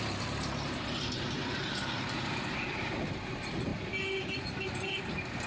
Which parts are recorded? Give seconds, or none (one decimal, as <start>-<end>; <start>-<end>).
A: 3.7-4.2